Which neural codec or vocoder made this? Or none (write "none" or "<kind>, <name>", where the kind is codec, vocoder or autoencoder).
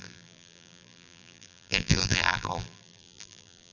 vocoder, BigVGAN v2